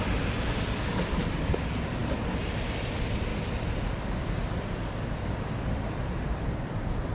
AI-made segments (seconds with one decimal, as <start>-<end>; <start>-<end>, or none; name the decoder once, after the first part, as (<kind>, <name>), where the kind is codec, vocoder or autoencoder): 0.0-3.3 (vocoder, BigVGAN v2); 5.5-7.1